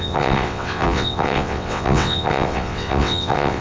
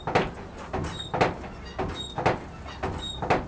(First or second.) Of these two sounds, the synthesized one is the first